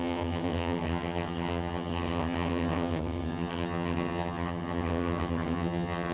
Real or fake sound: fake